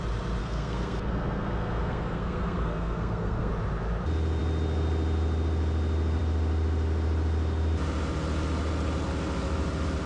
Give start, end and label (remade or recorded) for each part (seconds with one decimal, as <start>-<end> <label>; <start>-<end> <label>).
0.0-0.4 recorded; 0.4-3.5 remade; 3.5-10.1 recorded